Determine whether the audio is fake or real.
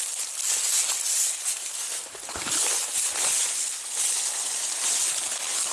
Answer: real